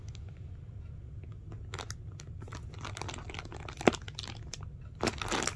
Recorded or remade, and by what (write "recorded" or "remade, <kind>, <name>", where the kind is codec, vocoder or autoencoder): recorded